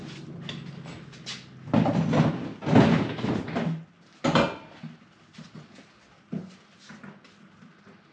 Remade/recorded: recorded